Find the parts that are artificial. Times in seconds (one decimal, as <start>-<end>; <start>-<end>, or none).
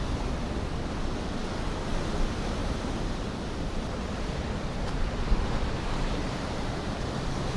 2.6-7.0